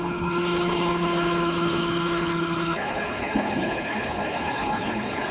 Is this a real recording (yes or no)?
no